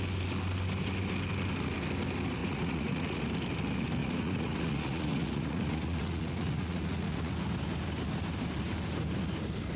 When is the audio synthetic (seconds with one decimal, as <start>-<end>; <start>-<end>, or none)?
2.4-3.2; 4.0-7.3